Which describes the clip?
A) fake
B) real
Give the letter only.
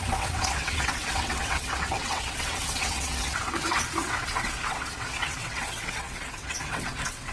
A